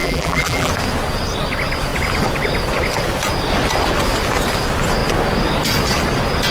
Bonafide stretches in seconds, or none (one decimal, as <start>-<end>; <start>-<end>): 0.7-6.5